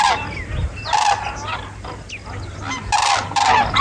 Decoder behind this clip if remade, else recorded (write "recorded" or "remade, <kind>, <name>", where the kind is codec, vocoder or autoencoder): recorded